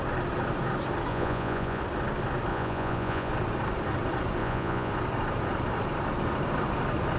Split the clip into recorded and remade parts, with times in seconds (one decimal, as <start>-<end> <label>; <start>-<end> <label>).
0.0-1.1 recorded; 1.1-1.8 remade; 1.8-2.5 recorded; 2.5-3.3 remade; 3.3-4.4 recorded; 4.4-4.9 remade; 4.9-7.2 recorded

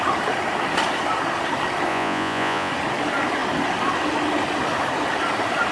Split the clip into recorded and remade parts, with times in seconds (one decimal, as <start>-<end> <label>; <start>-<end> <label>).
0.0-1.9 recorded; 1.9-2.7 remade; 2.7-5.7 recorded